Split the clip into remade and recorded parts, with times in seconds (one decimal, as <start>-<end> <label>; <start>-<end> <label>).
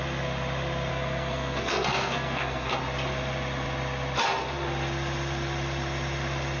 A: 0.0-0.9 recorded; 0.9-2.8 remade; 2.8-6.6 recorded